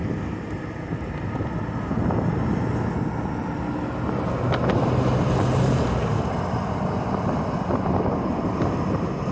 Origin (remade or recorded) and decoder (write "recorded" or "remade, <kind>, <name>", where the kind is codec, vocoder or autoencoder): recorded